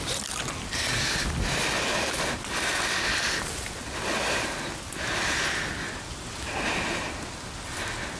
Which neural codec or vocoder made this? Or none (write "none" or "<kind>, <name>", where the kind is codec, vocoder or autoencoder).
none